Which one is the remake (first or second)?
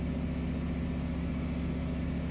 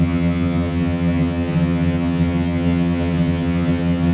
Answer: second